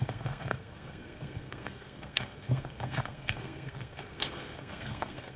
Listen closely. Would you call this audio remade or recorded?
remade